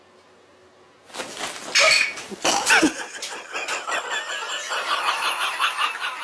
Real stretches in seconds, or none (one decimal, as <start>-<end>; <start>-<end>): 0.0-6.2